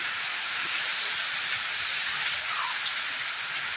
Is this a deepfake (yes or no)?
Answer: yes